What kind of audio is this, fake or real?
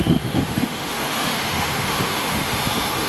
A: fake